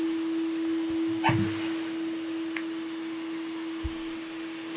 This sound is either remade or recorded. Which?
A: recorded